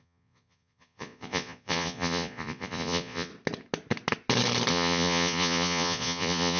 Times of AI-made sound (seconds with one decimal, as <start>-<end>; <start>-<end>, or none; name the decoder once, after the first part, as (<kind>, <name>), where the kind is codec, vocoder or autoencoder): 0.0-3.3 (vocoder, Vocos); 4.7-6.6